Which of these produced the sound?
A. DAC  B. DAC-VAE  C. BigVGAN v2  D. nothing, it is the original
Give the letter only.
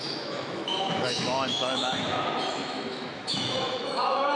B